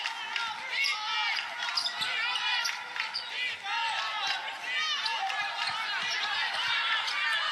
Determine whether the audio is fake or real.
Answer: real